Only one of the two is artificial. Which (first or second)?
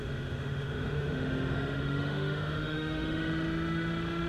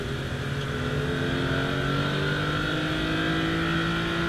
first